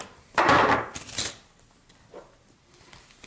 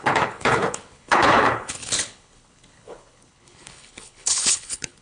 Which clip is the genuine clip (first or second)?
first